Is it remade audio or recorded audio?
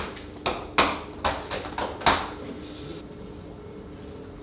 recorded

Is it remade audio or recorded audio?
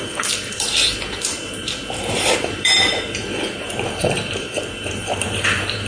remade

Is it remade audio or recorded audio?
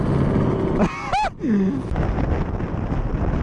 recorded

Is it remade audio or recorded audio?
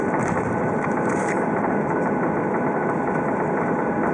remade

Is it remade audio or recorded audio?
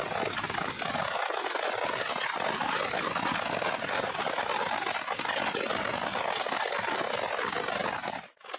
recorded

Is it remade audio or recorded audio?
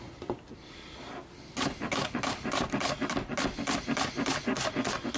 recorded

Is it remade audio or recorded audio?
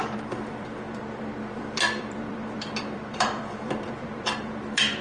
remade